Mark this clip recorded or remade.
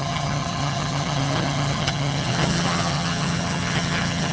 remade